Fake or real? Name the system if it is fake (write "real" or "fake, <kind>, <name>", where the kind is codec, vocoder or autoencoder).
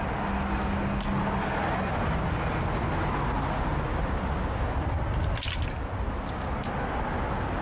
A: real